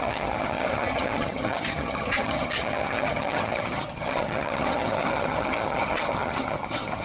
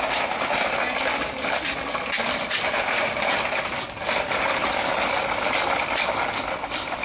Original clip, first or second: second